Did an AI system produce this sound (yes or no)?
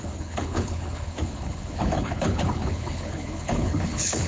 yes